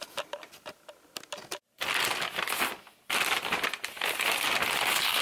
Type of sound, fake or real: real